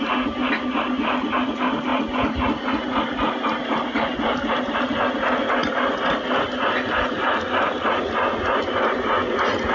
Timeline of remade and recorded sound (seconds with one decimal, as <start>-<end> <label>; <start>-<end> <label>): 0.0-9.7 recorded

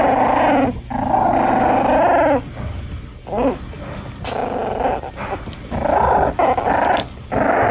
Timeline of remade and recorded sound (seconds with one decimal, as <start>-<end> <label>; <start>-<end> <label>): 0.0-7.7 recorded

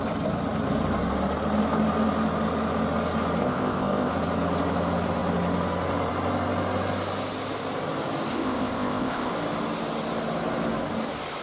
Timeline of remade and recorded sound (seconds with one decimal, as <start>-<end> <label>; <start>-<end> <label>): 0.0-3.4 recorded; 3.4-4.1 remade; 4.1-8.3 recorded; 8.3-9.3 remade; 9.3-11.4 recorded